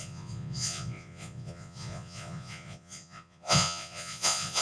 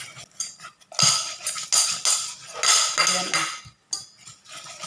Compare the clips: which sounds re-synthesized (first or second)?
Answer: first